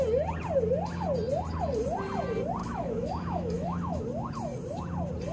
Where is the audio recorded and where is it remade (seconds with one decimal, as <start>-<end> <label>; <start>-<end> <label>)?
0.0-2.6 recorded; 2.6-4.0 remade; 4.0-5.3 recorded